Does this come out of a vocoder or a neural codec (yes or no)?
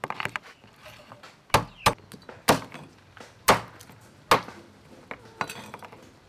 no